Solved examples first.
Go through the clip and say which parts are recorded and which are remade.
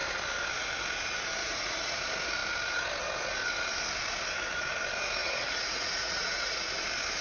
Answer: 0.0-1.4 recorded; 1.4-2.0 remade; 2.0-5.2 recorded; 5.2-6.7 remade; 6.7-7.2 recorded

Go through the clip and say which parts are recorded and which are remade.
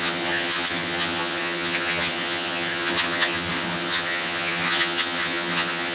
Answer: 0.0-5.9 remade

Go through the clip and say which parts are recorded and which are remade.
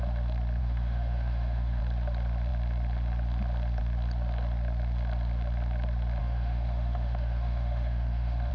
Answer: 0.0-0.6 recorded; 0.6-1.8 remade; 1.8-6.2 recorded; 6.2-8.5 remade